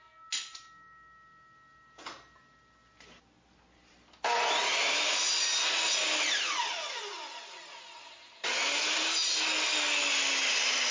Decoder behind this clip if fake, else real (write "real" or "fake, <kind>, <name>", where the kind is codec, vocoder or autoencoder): real